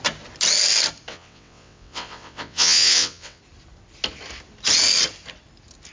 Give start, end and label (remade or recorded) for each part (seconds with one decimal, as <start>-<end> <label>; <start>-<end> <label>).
0.0-1.1 recorded; 1.1-3.4 remade; 3.4-5.9 recorded